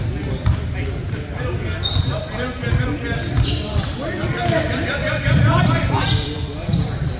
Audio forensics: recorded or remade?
recorded